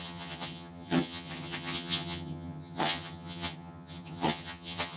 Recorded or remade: remade